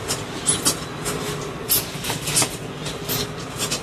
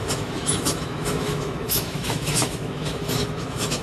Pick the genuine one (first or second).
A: first